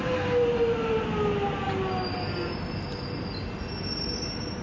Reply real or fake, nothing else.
real